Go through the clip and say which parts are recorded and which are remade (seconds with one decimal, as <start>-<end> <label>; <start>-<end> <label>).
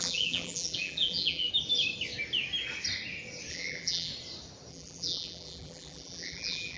0.0-1.5 remade; 1.5-3.5 recorded; 3.5-4.1 remade; 4.1-4.7 recorded; 4.7-6.8 remade